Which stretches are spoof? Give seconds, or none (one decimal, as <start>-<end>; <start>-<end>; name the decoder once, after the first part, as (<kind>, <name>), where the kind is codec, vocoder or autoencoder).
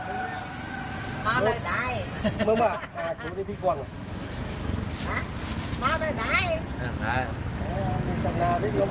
3.5-4.8 (autoencoder, DAC-VAE)